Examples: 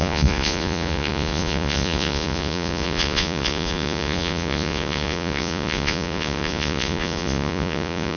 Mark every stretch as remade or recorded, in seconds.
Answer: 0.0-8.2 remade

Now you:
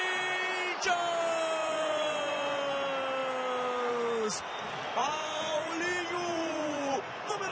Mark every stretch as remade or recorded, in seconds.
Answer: 0.0-1.6 recorded; 1.6-2.6 remade; 2.6-5.0 recorded; 5.0-5.7 remade; 5.7-6.3 recorded; 6.3-7.5 remade

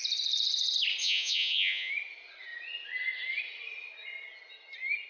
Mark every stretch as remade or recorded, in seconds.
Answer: 0.0-1.0 recorded; 1.0-1.9 remade; 1.9-5.1 recorded

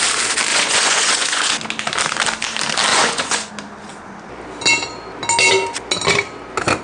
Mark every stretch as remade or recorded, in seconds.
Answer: 0.0-0.5 recorded; 0.5-1.5 remade; 1.5-2.9 recorded; 2.9-3.5 remade; 3.5-6.8 recorded

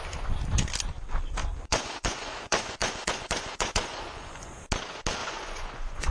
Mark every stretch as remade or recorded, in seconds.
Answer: 0.0-1.7 recorded; 1.7-4.6 remade; 4.6-5.2 recorded; 5.2-6.1 remade

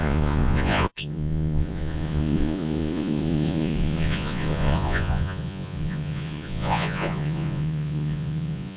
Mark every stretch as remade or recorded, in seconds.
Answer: 0.0-8.8 remade